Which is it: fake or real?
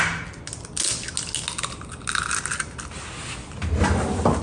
real